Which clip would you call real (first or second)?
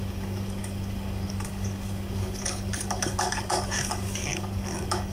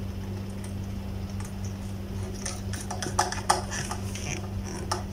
second